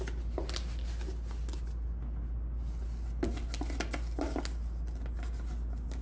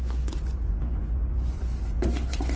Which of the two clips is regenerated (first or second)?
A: second